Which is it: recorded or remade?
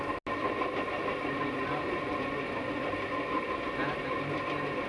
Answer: recorded